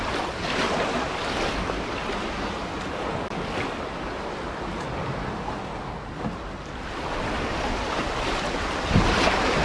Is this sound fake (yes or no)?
no